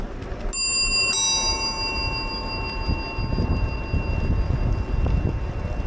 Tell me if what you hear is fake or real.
real